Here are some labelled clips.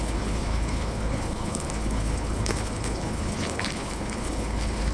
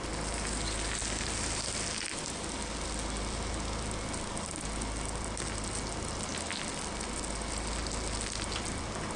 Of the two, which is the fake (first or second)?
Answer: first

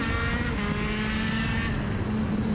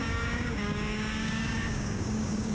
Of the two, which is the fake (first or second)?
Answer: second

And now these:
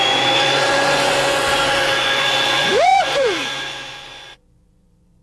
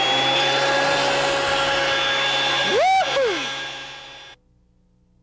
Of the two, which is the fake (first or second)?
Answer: first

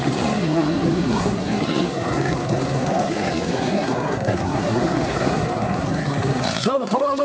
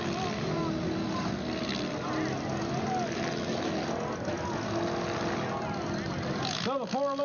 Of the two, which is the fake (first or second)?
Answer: first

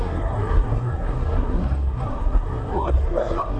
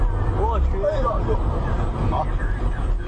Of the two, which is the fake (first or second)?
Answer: first